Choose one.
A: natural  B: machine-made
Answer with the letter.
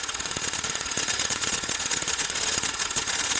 B